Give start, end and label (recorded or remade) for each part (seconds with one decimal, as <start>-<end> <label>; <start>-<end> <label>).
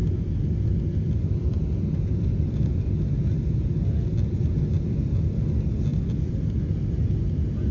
0.0-3.0 remade; 3.0-5.9 recorded; 5.9-6.6 remade; 6.6-7.7 recorded